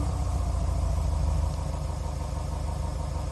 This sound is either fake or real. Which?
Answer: real